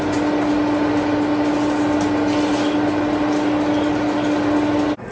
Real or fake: real